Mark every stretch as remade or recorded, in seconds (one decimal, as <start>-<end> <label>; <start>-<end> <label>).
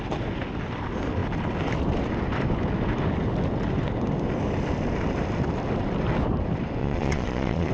0.0-6.8 recorded; 6.8-7.7 remade